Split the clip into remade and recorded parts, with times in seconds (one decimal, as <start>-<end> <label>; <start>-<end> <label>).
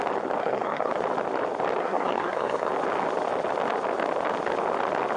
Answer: 0.0-0.4 recorded; 0.4-0.9 remade; 0.9-1.8 recorded; 1.8-2.7 remade; 2.7-5.2 recorded